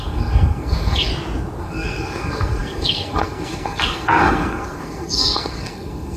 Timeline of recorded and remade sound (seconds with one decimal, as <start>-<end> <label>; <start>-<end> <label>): 0.0-1.1 remade; 1.1-1.6 recorded; 1.6-6.2 remade